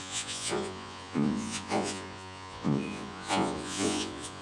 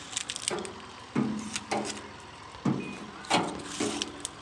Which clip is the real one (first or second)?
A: second